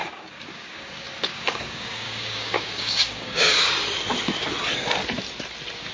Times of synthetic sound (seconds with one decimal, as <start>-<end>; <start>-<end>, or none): 0.0-0.9; 1.3-3.7